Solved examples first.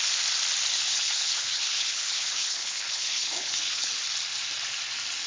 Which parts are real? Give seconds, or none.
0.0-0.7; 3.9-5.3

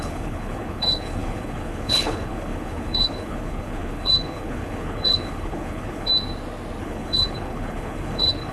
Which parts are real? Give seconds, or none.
6.1-6.8

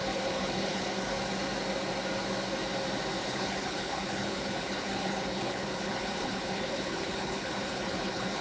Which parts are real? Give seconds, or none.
1.2-3.2

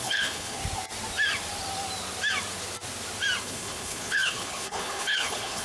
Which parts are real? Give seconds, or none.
0.6-3.4

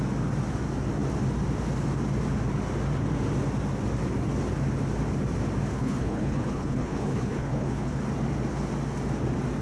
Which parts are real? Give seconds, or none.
0.0-5.7; 8.0-9.6